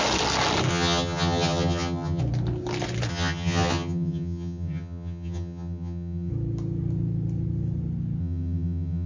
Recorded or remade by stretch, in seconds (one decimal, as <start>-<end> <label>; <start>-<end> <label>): 0.0-0.7 recorded; 0.7-2.2 remade; 2.2-3.1 recorded; 3.1-6.3 remade; 6.3-8.2 recorded; 8.2-9.1 remade